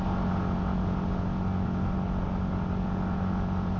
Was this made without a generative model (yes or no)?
yes